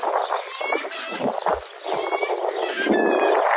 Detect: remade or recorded recorded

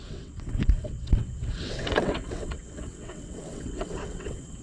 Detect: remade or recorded remade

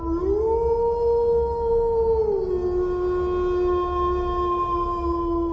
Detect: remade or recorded recorded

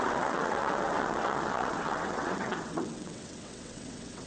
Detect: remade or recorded remade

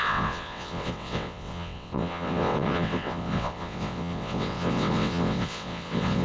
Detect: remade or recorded remade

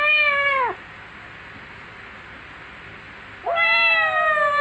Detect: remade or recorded recorded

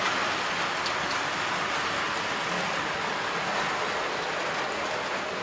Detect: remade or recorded recorded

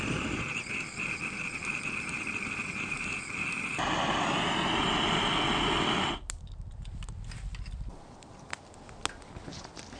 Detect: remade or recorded recorded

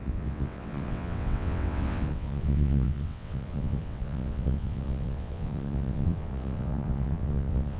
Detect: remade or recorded remade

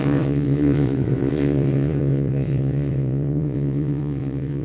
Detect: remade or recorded remade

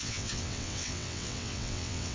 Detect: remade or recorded remade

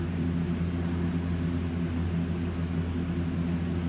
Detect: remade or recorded recorded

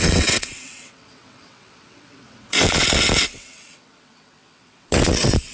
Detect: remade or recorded remade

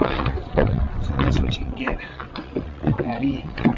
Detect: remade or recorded remade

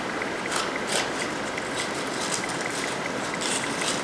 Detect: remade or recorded recorded